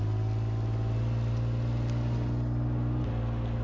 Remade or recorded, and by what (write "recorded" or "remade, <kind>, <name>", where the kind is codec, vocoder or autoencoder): recorded